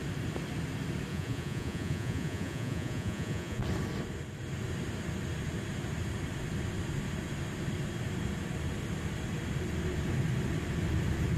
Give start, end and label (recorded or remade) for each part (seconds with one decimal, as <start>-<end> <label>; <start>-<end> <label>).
0.0-1.1 recorded; 1.1-3.6 remade; 3.6-11.4 recorded